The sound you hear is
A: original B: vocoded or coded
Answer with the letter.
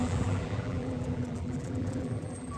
B